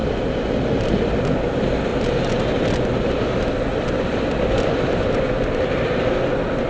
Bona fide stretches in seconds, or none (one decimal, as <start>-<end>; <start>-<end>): 1.2-1.9; 5.2-6.7